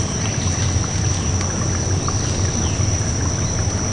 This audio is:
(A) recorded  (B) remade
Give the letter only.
A